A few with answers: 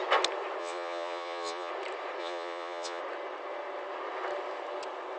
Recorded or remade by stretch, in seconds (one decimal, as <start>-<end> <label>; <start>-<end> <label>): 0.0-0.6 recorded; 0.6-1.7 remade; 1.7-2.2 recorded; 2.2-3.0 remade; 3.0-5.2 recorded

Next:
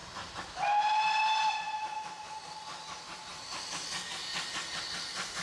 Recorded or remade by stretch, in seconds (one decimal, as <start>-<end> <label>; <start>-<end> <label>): 0.0-5.4 recorded

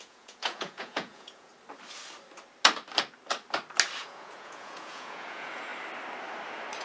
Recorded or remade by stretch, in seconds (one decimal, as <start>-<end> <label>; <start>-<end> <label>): 0.0-1.5 remade; 1.5-4.0 recorded; 4.0-5.7 remade; 5.7-6.8 recorded

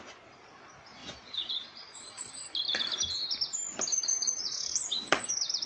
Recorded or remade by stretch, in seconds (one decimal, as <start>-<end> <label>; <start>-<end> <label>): 0.0-1.0 recorded; 1.0-2.3 remade; 2.3-4.1 recorded; 4.1-5.3 remade; 5.3-5.7 recorded